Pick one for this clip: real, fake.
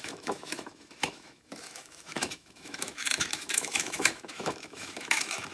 fake